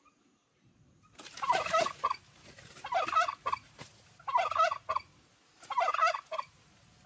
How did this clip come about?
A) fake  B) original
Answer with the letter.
B